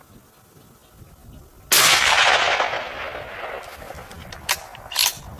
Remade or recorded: recorded